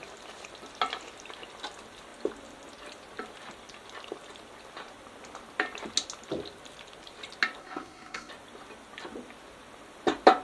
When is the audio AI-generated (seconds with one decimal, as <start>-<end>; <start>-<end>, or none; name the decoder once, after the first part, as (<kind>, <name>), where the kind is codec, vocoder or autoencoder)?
7.6-8.3 (codec, SNAC)